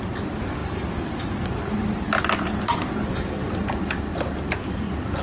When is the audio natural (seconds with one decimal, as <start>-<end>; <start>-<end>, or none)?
0.0-5.2

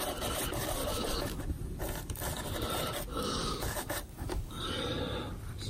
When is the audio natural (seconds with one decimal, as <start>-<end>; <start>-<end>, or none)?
0.0-0.8; 1.4-3.1; 4.6-5.7

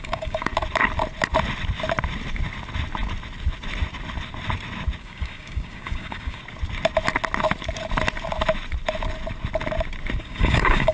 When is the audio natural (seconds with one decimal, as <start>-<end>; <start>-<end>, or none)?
0.5-5.0; 6.4-10.2

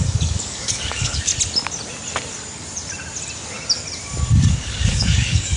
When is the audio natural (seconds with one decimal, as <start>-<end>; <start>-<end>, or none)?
1.3-4.5

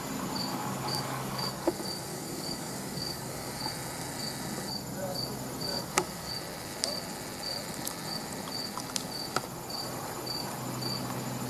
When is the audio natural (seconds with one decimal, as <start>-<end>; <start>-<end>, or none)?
0.0-0.5; 1.7-2.1; 3.5-5.7; 6.3-11.5